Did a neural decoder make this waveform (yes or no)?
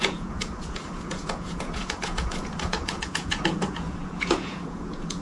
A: yes